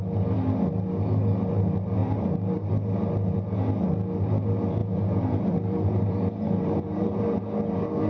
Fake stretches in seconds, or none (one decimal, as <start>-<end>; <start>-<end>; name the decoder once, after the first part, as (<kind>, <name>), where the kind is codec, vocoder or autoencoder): 2.0-2.7 (vocoder, BigVGAN v2); 4.8-7.2

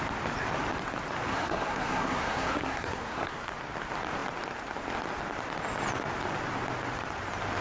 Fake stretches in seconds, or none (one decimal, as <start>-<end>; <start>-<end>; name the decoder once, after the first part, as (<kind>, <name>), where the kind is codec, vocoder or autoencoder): 1.3-3.5 (codec, SNAC)

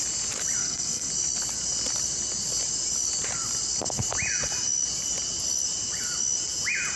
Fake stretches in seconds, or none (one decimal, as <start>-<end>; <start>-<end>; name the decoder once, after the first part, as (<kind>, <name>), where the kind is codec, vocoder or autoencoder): 0.6-1.1 (codec, SNAC)

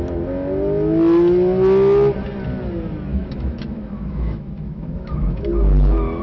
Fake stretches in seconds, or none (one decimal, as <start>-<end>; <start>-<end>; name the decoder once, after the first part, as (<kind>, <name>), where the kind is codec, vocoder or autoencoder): 3.1-5.5 (autoencoder, DAC-VAE)

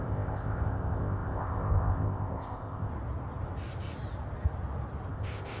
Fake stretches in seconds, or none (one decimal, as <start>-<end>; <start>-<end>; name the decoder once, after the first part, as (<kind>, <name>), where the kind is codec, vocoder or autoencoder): 0.0-2.9 (codec, ZipCodec); 5.1-5.6

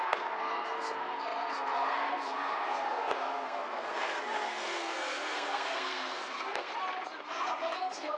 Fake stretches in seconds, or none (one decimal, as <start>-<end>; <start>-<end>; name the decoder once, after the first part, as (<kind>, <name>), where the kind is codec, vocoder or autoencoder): 0.0-6.7 (codec, SNAC); 7.2-8.2

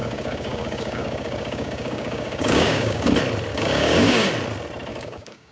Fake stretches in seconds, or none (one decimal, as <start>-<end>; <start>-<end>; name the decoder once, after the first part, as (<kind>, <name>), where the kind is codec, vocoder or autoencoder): 0.0-3.1 (codec, DAC); 3.5-4.3; 4.9-5.5